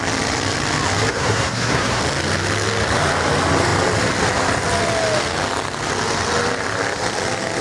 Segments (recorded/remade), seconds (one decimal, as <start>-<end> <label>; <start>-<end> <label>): 0.0-1.1 recorded; 1.1-2.0 remade; 2.0-7.6 recorded